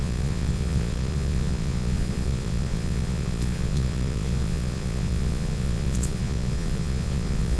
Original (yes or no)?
no